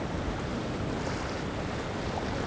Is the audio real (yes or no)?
yes